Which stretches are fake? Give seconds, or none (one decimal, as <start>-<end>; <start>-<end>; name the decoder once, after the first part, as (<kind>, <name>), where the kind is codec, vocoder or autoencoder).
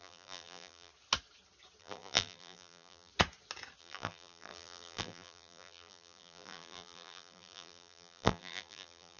0.0-0.9 (vocoder, BigVGAN v2); 1.8-3.1; 3.8-9.2